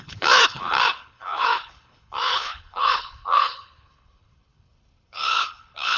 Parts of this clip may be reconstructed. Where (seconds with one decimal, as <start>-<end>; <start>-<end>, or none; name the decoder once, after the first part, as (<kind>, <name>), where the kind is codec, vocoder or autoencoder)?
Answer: 0.0-6.0 (codec, HILCodec)